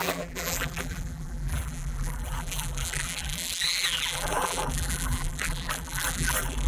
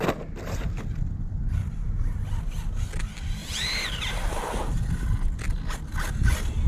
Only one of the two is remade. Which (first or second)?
first